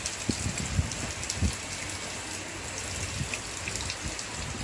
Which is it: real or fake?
real